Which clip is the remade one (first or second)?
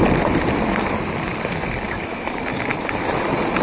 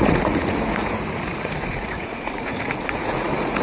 second